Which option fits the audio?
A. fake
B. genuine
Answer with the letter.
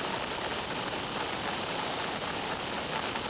B